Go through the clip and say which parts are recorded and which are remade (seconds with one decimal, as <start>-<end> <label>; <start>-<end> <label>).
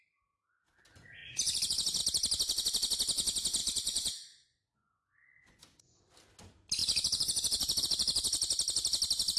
0.0-1.2 recorded; 1.2-2.0 remade; 2.0-3.6 recorded; 3.6-6.0 remade; 6.0-9.4 recorded